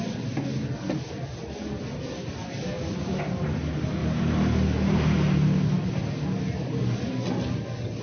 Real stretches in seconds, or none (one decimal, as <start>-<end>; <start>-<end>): 0.0-8.0